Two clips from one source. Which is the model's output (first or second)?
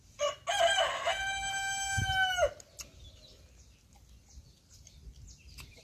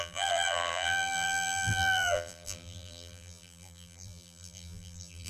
second